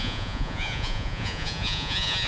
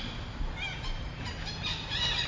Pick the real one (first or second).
second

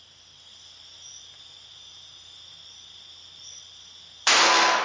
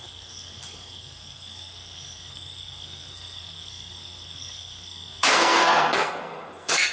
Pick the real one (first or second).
first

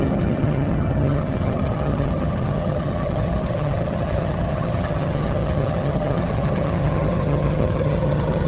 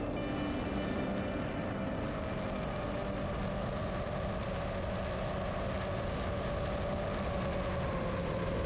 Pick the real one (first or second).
second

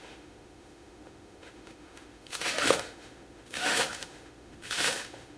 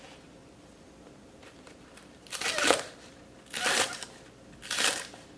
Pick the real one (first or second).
second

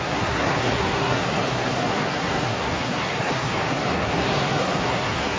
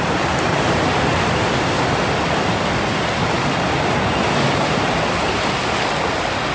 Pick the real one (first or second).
second